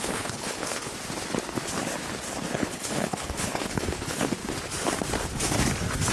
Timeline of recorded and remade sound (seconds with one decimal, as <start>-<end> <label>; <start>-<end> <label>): 0.0-0.9 remade; 0.9-2.4 recorded; 2.4-4.4 remade; 4.4-6.1 recorded